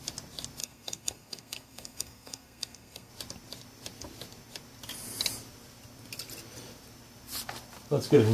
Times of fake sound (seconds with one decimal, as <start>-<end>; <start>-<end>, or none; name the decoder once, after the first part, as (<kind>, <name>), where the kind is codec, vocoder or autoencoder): 0.6-3.1 (codec, SNAC)